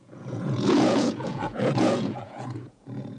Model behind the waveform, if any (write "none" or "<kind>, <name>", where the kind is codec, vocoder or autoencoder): vocoder, Vocos